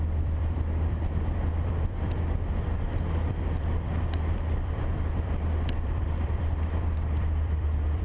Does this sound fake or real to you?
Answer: fake